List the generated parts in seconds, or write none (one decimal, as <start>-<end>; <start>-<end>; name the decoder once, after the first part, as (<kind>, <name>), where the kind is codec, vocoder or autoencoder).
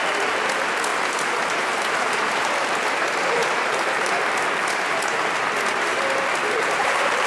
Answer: 0.9-2.5 (vocoder, BigVGAN v2); 3.4-4.2; 6.4-7.3